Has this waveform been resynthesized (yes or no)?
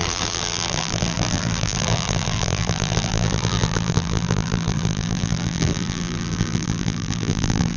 yes